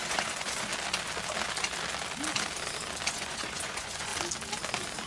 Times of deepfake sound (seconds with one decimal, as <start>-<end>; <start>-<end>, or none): 0.0-0.7; 3.1-4.1